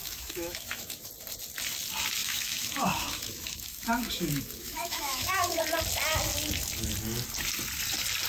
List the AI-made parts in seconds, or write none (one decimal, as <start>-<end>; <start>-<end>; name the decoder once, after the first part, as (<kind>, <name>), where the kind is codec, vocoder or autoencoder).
0.0-1.1 (autoencoder, DAC-VAE); 2.2-5.6